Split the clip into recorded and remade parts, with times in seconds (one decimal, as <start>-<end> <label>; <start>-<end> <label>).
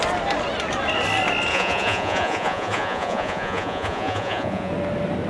0.0-1.5 recorded; 1.5-4.7 remade; 4.7-5.3 recorded